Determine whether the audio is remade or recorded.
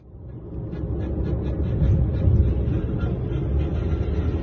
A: recorded